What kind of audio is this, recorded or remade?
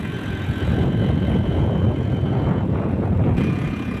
remade